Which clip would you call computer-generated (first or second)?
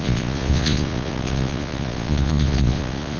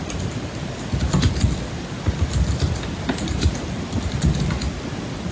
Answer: first